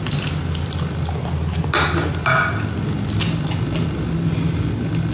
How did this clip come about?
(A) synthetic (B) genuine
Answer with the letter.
B